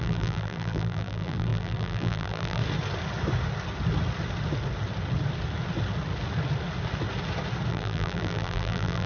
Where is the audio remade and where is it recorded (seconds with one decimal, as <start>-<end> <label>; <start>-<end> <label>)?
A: 0.0-2.6 remade; 2.6-7.7 recorded; 7.7-9.1 remade